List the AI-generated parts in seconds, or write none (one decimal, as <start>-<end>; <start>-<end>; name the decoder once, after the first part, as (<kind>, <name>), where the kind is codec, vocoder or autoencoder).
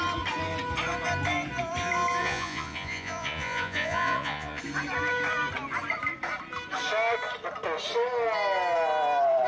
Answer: 2.2-4.6 (vocoder, Vocos)